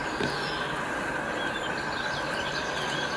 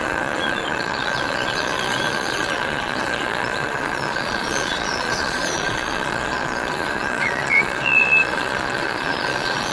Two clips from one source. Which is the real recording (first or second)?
first